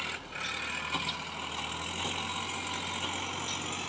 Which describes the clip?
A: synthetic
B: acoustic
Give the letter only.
B